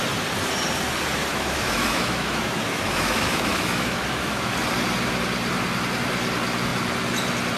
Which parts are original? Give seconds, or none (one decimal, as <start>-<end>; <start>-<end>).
0.0-1.3; 4.5-7.6